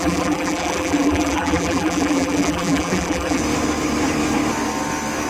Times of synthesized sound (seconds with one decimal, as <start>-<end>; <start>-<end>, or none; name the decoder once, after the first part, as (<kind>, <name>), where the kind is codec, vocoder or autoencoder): 0.0-3.4 (vocoder, BigVGAN v2)